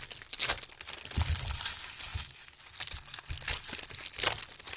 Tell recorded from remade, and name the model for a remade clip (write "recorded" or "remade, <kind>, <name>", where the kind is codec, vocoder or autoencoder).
recorded